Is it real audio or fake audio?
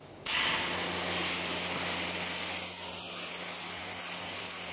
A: real